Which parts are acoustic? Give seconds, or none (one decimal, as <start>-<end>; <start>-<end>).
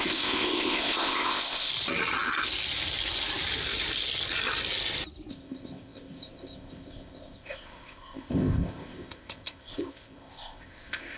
1.7-5.3